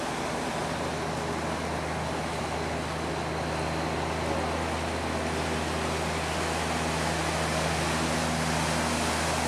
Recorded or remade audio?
recorded